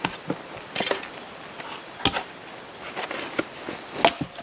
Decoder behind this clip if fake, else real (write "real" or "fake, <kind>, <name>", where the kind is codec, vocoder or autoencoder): real